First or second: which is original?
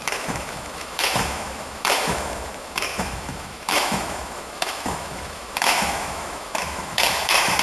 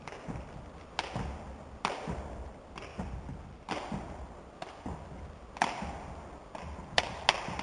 second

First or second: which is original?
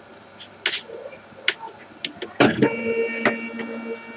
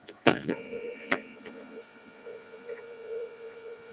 first